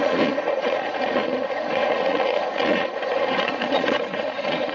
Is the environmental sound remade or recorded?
remade